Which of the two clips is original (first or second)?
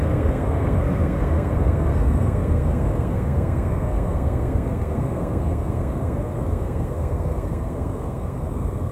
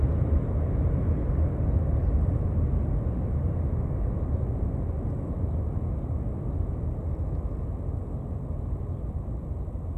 second